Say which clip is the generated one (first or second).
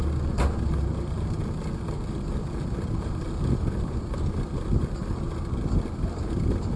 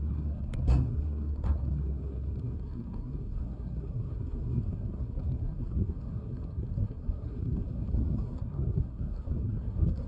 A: second